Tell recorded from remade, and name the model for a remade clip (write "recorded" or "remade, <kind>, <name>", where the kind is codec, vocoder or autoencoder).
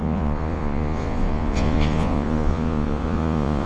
remade, vocoder, Vocos